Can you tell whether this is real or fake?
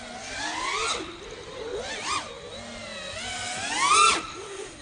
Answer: real